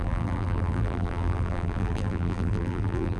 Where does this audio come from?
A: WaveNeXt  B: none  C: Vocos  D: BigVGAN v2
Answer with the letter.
D